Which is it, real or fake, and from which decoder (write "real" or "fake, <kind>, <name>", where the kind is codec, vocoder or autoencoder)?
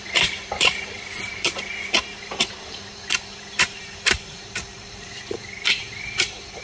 fake, vocoder, BigVGAN v2